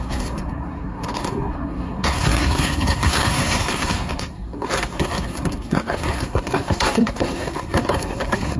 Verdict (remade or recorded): remade